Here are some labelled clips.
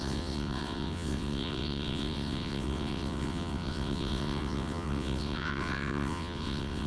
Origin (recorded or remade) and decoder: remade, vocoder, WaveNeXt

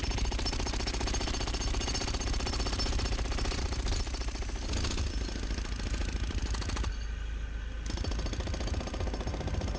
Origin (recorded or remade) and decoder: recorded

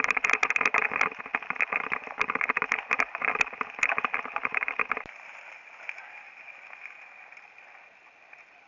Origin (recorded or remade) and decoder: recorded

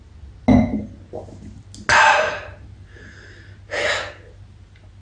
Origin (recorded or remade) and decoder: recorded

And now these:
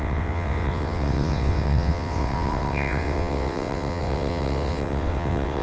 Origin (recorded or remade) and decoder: remade, vocoder, WaveNeXt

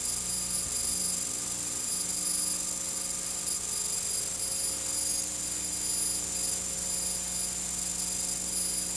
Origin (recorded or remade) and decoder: recorded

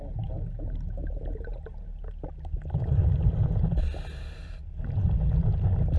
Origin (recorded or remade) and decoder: recorded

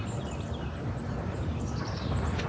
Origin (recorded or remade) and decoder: recorded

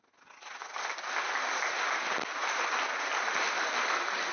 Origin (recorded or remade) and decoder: recorded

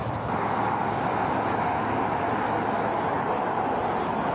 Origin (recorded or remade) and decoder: recorded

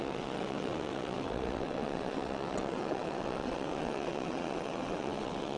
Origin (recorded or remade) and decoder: remade, vocoder, WaveNeXt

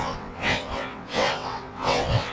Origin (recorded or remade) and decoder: remade, vocoder, WaveNeXt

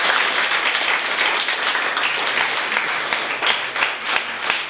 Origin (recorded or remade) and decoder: recorded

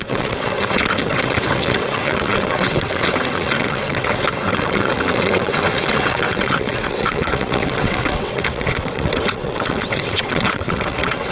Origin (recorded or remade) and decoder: remade, vocoder, WaveNeXt